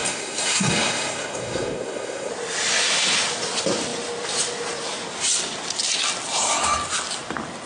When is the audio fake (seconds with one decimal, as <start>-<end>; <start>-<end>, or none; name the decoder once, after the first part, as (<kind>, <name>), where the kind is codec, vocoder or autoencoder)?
0.0-2.3 (codec, SNAC)

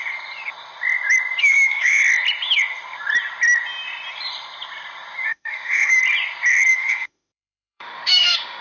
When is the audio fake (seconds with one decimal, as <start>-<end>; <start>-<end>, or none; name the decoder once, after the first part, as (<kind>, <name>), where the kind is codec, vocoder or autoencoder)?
1.4-2.0 (autoencoder, DAC-VAE); 5.3-6.0; 6.7-8.6